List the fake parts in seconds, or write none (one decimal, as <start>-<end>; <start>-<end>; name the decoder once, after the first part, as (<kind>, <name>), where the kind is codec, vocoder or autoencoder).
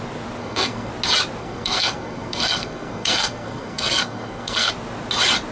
0.4-0.9 (codec, SNAC); 1.4-4.7